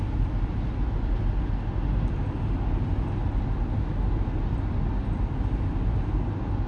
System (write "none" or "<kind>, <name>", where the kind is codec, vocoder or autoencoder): none